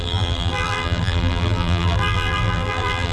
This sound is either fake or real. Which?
fake